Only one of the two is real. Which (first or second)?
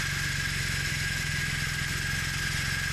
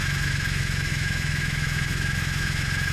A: first